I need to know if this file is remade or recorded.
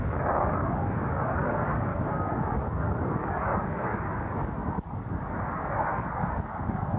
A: remade